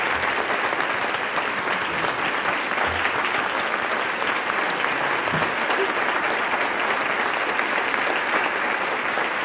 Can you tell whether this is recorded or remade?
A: recorded